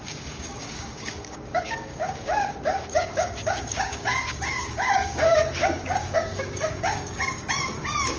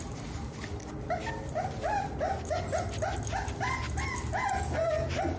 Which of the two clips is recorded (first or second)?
second